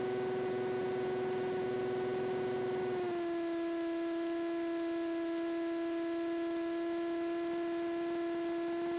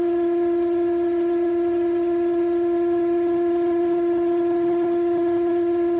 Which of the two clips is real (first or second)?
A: first